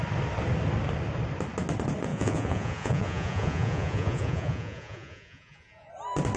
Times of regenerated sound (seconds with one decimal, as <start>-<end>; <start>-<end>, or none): 2.1-5.9